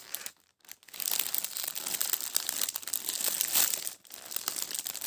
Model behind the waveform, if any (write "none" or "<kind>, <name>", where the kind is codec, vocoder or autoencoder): none